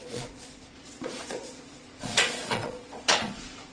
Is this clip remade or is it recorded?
remade